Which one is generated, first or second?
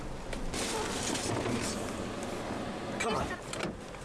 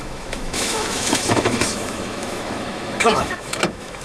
second